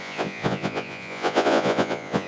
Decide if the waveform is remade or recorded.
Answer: remade